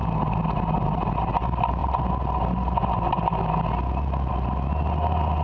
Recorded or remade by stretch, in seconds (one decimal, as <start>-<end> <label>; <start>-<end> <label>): 0.0-5.4 recorded